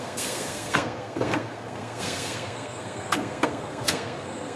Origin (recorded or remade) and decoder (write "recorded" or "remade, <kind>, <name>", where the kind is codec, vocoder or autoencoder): remade, codec, SNAC